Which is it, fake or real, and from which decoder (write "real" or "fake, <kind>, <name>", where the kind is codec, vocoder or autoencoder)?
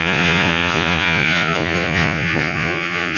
fake, vocoder, Vocos